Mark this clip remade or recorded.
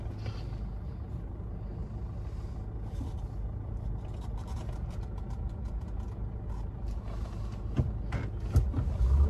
recorded